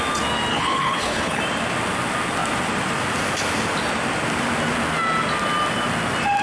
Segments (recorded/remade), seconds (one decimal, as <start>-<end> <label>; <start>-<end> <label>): 0.0-0.5 recorded; 0.5-1.4 remade; 1.4-6.4 recorded